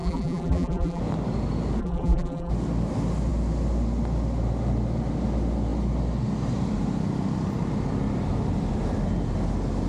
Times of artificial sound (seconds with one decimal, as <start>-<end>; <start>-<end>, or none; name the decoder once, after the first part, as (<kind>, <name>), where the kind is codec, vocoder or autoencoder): 0.0-1.0 (vocoder, BigVGAN v2); 1.8-2.5